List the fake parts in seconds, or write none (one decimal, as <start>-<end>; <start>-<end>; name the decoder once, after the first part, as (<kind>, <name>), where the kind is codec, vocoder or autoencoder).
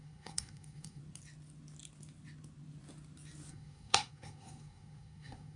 0.0-1.0 (codec, SNAC); 3.5-5.6